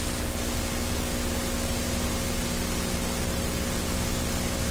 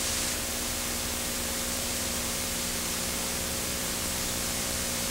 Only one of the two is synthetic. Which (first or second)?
second